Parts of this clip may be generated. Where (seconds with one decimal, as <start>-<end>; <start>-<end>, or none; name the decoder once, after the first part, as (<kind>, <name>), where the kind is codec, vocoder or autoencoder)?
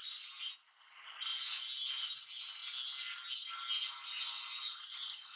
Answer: none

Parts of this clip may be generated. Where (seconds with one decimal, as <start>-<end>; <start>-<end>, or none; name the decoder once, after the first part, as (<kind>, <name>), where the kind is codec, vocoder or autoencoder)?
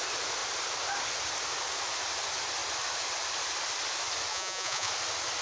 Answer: 4.3-4.9 (vocoder, Vocos)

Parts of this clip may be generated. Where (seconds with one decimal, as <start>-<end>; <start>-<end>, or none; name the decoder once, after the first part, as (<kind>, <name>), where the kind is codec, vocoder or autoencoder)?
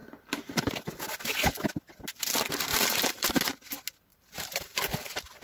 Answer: 2.7-3.4 (vocoder, BigVGAN v2); 4.1-4.8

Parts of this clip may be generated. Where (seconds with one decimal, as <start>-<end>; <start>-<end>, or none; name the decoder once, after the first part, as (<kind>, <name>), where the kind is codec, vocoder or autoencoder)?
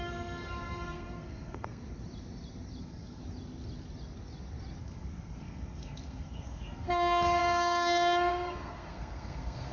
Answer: 0.0-1.8 (codec, SNAC); 2.8-3.2; 4.8-9.7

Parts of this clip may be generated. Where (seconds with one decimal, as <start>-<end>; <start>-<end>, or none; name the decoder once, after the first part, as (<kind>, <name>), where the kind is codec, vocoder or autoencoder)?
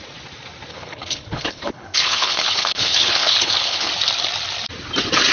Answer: 0.7-3.9 (codec, HILCodec)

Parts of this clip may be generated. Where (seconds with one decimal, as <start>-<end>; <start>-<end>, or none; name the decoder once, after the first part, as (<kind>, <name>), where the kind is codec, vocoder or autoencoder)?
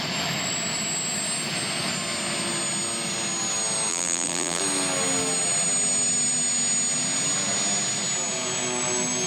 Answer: 3.9-4.6 (vocoder, BigVGAN v2)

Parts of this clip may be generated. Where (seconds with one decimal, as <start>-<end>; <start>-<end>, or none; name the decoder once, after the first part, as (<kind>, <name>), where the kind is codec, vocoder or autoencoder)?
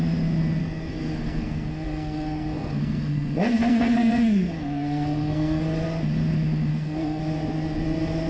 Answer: 0.6-5.6 (codec, SNAC); 6.7-7.2